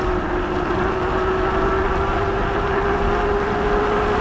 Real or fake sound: real